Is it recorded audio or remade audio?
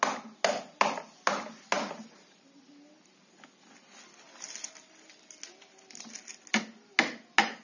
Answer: recorded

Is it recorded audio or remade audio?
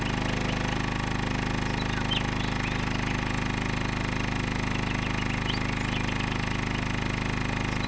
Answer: recorded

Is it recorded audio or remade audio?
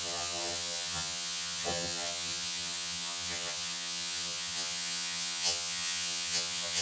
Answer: remade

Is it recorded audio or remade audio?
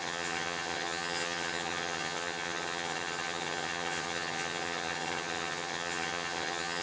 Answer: remade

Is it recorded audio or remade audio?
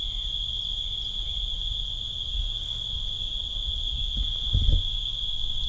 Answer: recorded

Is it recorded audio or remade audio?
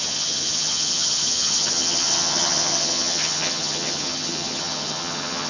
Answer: remade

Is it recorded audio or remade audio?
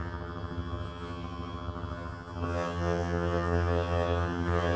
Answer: remade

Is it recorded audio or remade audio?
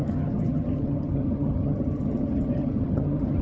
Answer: remade